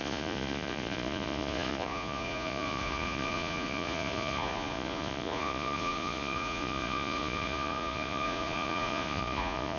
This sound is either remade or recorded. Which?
remade